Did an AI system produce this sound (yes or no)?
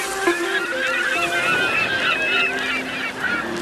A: no